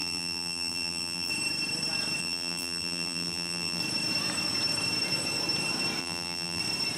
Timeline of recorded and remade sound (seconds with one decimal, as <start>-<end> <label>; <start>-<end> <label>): 0.0-1.3 remade; 1.3-2.2 recorded; 2.2-3.8 remade; 3.8-6.0 recorded; 6.0-6.6 remade; 6.6-7.0 recorded

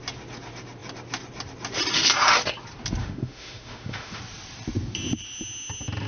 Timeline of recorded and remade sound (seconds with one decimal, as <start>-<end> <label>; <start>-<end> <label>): 0.0-3.0 recorded; 3.0-4.2 remade; 4.2-6.1 recorded

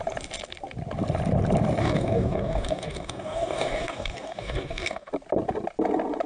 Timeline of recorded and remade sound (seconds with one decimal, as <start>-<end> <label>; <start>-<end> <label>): 0.0-1.8 recorded; 1.8-5.1 remade; 5.1-6.3 recorded

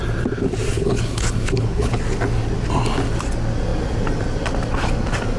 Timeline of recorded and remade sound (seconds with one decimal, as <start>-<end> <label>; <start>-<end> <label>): 0.0-0.7 recorded; 0.7-2.0 remade; 2.0-5.4 recorded

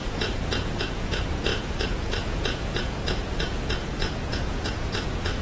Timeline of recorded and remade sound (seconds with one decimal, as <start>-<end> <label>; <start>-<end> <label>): 0.0-5.4 remade

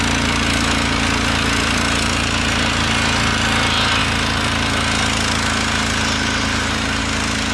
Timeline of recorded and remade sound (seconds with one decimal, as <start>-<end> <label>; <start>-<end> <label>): 0.0-7.5 recorded